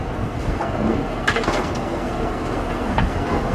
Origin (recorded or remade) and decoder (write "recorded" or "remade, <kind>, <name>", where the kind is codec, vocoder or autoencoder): remade, codec, SNAC